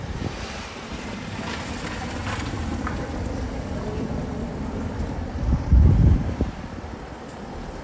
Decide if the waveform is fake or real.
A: real